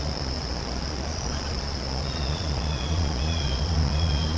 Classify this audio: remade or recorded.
remade